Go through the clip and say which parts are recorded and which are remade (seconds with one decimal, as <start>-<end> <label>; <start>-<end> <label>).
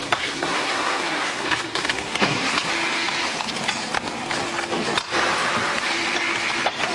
0.0-2.7 remade; 2.7-6.9 recorded